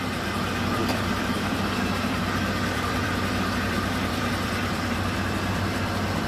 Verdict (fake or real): fake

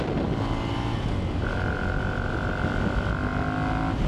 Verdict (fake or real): real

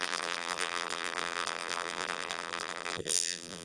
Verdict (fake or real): fake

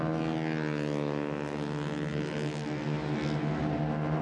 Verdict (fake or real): real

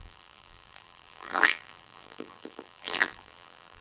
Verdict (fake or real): fake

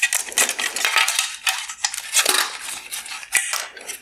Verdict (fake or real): real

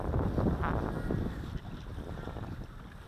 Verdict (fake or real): real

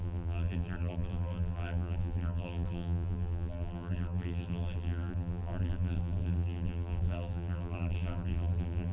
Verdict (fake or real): fake